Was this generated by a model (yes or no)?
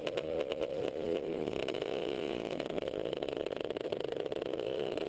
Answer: yes